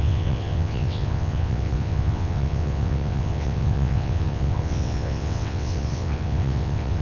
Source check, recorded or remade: remade